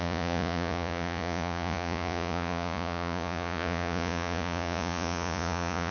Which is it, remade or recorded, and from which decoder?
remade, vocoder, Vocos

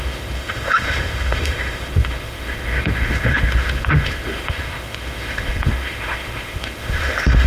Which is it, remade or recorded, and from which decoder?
remade, autoencoder, DAC-VAE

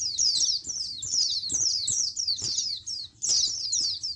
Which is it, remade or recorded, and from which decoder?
remade, vocoder, BigVGAN v2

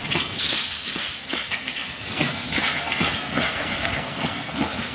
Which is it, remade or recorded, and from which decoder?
remade, codec, SNAC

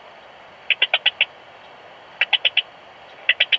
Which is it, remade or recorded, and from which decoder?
recorded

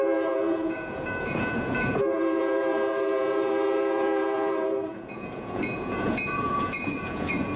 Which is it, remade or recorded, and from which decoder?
remade, vocoder, Vocos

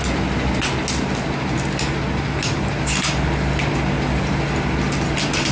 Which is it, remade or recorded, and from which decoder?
recorded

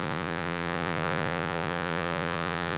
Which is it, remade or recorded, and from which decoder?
remade, vocoder, Vocos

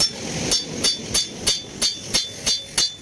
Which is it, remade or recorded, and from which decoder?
recorded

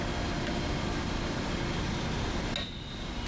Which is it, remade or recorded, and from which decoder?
recorded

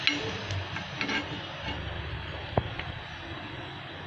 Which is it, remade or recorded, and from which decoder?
recorded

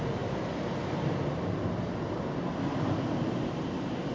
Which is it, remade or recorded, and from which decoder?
recorded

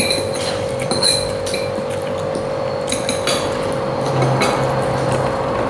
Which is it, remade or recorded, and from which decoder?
recorded